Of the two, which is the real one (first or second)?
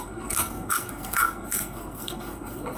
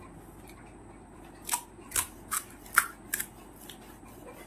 second